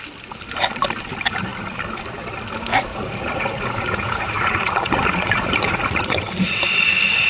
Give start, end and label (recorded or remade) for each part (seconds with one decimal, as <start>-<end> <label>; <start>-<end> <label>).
0.0-2.9 recorded; 2.9-6.6 remade; 6.6-7.3 recorded